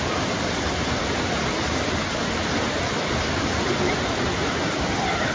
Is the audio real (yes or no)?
yes